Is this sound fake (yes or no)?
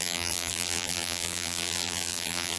yes